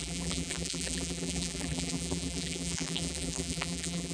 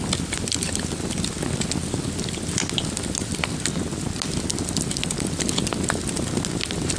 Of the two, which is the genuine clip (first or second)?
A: second